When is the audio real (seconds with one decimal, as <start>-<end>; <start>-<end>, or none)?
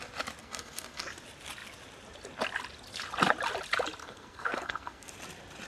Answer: 0.0-0.4; 1.1-4.0; 5.1-5.7